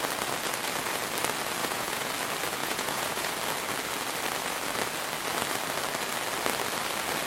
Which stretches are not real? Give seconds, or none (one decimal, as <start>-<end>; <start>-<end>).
1.6-2.1; 2.6-3.3